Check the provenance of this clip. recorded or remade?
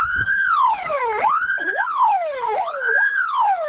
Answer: remade